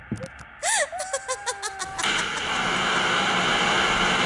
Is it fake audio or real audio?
real